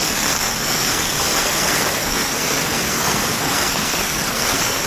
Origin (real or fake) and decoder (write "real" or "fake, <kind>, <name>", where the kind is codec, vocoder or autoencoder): fake, codec, SNAC